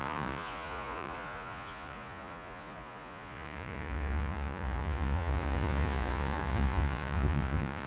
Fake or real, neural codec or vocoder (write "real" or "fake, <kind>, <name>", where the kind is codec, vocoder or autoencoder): fake, vocoder, Vocos